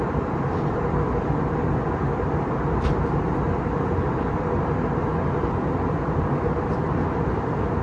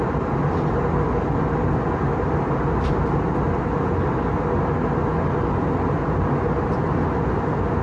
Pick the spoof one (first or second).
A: first